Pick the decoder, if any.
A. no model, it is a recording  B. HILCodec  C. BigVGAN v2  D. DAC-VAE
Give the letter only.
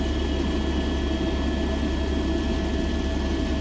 A